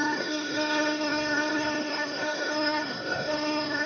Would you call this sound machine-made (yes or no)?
yes